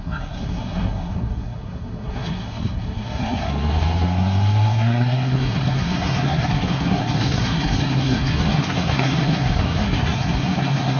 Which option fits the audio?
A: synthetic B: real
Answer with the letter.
A